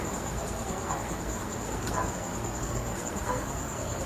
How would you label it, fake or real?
fake